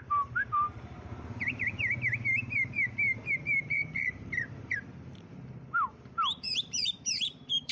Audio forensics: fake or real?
fake